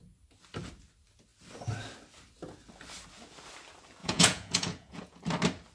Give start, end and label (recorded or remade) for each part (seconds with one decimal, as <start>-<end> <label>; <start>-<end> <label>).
0.0-4.0 recorded; 4.0-5.2 remade; 5.2-5.7 recorded